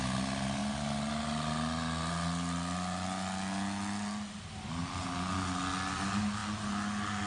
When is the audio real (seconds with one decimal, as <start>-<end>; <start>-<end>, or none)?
0.0-7.3